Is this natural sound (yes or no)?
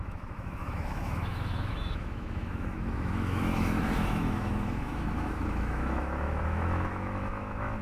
no